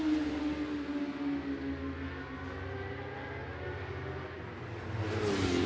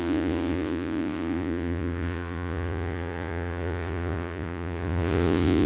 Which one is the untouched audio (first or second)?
first